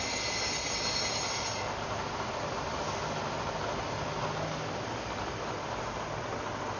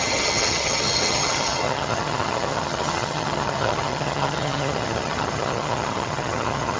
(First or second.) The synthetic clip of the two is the second